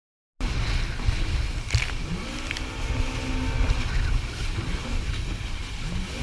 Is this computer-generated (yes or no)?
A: no